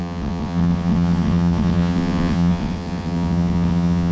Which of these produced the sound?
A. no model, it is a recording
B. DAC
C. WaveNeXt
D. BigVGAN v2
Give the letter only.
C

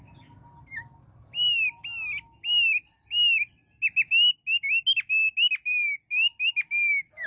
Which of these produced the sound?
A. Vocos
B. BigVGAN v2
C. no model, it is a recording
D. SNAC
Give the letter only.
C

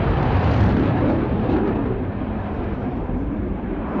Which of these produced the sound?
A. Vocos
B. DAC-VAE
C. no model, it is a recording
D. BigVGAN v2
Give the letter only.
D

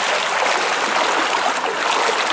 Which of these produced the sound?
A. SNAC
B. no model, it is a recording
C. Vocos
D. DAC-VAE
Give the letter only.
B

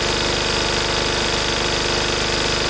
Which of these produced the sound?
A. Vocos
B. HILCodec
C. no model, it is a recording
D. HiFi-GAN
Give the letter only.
C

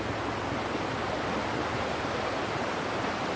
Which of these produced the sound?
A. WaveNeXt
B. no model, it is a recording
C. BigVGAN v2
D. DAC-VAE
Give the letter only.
B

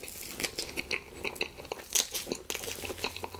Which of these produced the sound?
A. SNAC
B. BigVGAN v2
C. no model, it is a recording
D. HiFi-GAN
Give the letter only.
C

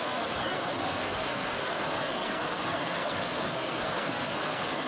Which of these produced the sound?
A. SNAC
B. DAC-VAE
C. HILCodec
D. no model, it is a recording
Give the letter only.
A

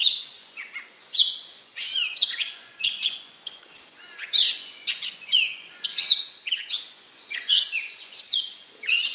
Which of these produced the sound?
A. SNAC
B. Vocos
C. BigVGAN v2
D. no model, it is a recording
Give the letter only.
B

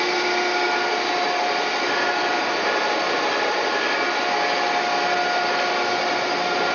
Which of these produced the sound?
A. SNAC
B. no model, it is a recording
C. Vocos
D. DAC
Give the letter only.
B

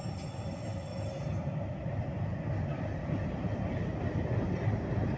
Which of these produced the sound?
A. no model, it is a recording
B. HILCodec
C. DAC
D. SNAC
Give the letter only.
A